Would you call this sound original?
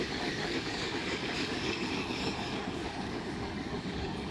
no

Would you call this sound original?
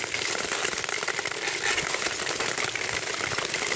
yes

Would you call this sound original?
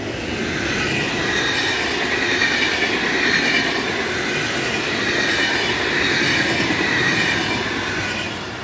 yes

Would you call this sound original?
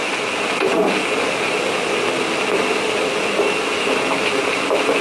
yes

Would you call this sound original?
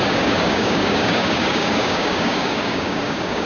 no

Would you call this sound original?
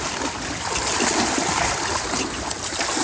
yes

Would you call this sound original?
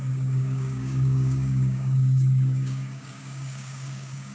no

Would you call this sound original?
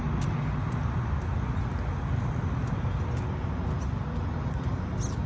yes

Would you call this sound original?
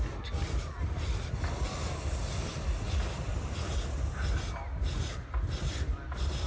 yes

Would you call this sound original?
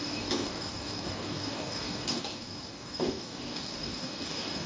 no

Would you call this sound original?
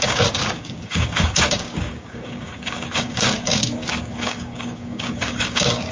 no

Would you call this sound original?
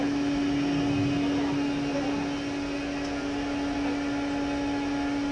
yes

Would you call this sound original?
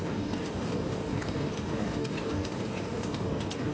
no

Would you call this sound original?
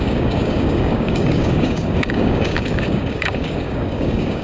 no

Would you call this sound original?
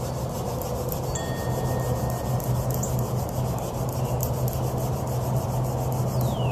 yes